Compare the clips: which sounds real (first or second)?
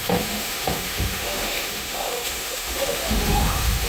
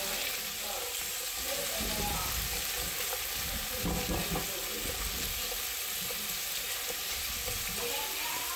second